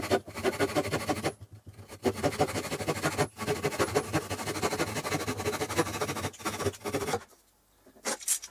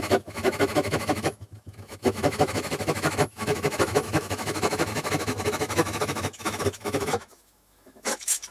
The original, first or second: first